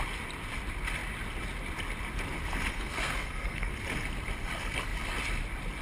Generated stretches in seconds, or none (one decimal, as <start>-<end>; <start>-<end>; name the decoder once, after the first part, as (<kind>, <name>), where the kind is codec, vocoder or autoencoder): 2.7-3.7 (codec, SNAC)